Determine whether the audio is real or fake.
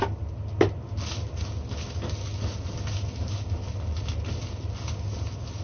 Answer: real